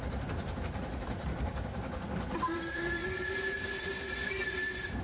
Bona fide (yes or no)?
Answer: yes